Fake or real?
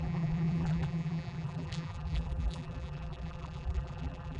fake